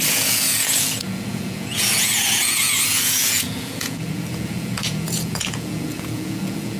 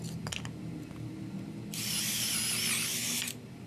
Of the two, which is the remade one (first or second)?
first